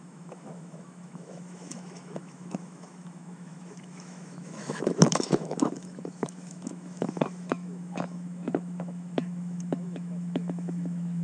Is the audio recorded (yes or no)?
no